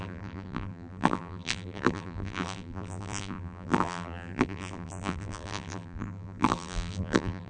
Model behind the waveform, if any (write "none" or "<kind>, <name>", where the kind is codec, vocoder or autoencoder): vocoder, BigVGAN v2